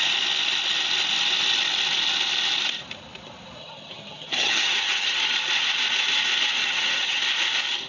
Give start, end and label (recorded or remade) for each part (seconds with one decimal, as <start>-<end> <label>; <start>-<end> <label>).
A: 0.0-3.6 recorded; 3.6-5.2 remade; 5.2-6.6 recorded; 6.6-7.2 remade; 7.2-7.9 recorded